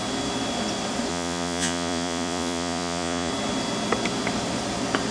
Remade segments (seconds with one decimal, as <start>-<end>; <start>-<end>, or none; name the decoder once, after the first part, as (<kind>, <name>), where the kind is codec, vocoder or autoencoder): 1.1-3.3 (vocoder, Vocos)